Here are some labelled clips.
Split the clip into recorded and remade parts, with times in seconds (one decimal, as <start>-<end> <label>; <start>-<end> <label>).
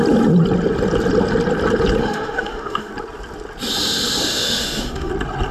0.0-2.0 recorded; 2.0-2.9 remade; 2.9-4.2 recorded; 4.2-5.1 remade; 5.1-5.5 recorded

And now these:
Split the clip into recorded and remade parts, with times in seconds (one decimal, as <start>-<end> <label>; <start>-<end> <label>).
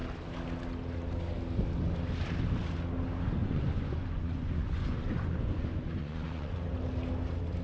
0.0-3.4 recorded; 3.4-6.6 remade; 6.6-7.6 recorded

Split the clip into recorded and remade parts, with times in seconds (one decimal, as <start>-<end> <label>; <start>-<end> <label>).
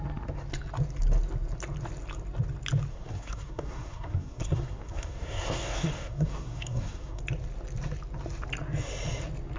0.0-2.9 recorded; 2.9-7.2 remade; 7.2-9.6 recorded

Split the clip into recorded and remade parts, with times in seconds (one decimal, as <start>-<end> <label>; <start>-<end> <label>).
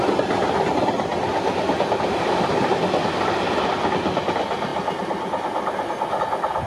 0.0-6.7 recorded